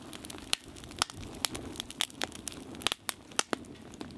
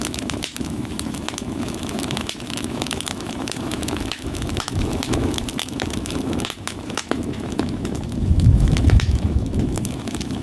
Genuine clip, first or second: first